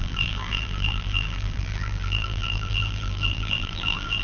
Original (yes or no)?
no